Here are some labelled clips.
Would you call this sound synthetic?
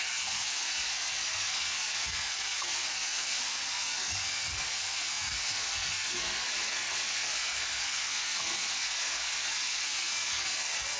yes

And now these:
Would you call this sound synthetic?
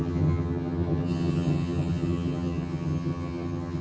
yes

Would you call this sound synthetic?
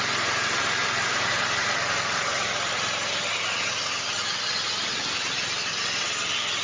yes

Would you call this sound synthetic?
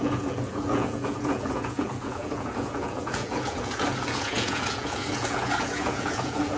yes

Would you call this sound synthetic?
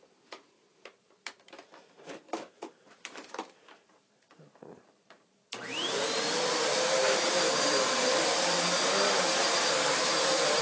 yes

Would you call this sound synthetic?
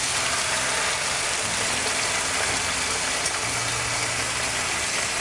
no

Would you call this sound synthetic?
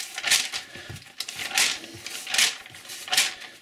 no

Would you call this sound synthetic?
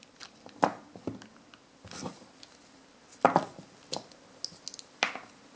no